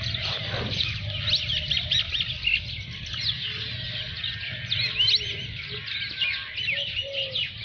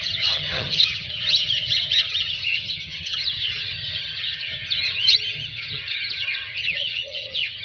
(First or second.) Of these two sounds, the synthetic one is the second